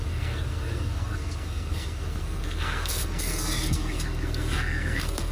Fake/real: fake